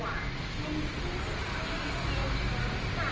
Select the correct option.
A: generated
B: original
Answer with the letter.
B